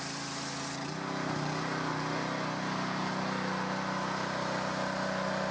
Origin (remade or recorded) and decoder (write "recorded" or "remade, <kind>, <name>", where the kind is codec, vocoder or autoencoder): recorded